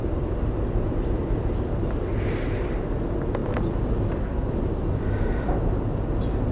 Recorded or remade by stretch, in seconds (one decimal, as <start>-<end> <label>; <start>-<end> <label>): 0.0-2.7 remade; 2.7-3.4 recorded; 3.4-5.5 remade; 5.5-6.5 recorded